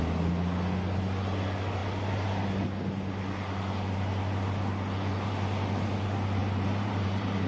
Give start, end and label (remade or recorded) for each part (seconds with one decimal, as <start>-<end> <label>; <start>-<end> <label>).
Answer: 0.0-6.4 recorded; 6.4-7.5 remade